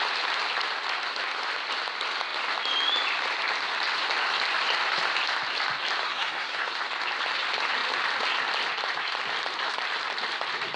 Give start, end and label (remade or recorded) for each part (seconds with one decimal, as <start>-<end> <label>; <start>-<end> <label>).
0.0-6.0 recorded; 6.0-6.7 remade; 6.7-10.8 recorded